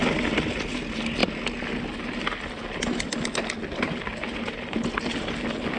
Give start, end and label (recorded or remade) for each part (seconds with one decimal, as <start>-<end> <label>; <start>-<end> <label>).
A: 0.0-5.8 recorded